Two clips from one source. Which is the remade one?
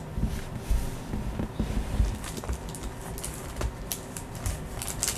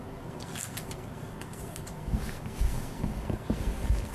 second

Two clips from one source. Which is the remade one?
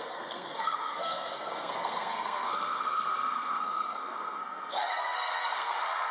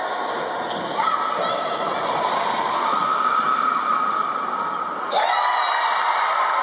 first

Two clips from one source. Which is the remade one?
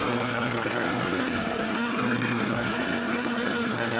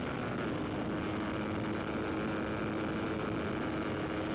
first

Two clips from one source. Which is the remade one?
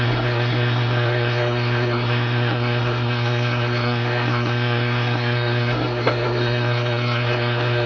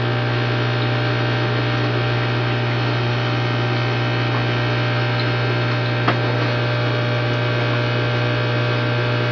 first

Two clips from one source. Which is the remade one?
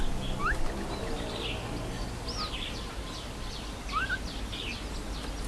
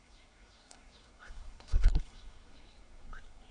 second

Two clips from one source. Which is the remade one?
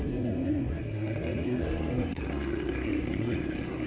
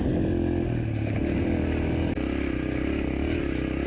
first